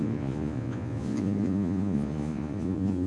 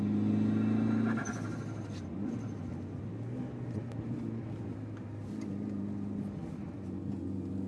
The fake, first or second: first